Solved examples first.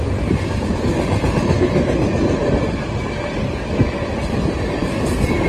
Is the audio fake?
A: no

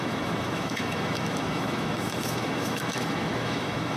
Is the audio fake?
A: yes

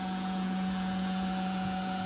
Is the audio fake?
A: yes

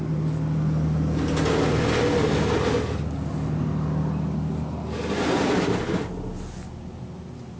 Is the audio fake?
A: no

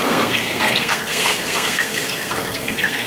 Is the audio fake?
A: yes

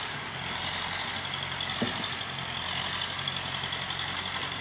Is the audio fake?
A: no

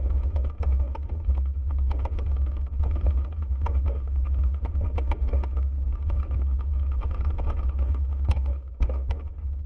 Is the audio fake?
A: yes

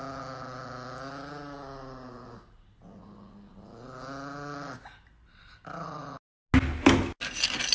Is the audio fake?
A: no